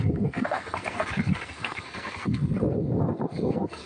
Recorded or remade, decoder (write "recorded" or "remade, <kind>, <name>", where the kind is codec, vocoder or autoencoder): remade, codec, SNAC